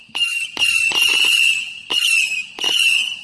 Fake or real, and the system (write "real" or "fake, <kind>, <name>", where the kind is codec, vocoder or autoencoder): real